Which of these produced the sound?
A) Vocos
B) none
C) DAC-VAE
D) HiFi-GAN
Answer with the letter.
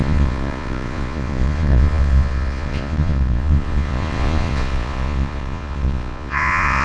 A